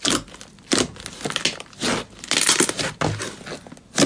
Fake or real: real